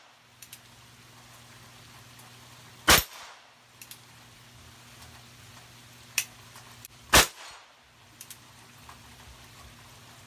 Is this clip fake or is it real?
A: real